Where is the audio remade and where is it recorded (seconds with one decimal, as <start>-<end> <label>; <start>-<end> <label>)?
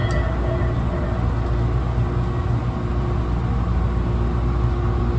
0.0-5.2 recorded